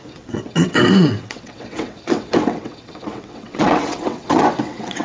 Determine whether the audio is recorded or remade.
remade